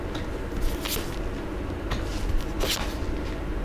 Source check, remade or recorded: recorded